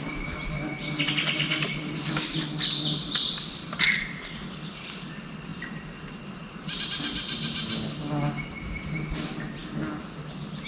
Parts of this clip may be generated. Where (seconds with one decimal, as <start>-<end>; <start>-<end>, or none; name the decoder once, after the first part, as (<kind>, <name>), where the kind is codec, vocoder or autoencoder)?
none